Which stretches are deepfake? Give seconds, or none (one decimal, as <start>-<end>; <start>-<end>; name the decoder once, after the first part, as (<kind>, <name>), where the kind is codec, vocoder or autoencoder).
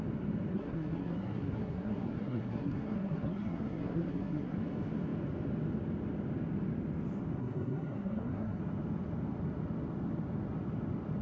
0.5-4.6 (codec, SNAC); 7.4-8.6